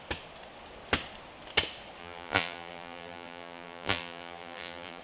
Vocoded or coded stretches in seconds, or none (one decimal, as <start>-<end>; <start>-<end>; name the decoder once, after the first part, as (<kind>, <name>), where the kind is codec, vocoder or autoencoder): 2.0-5.0 (vocoder, BigVGAN v2)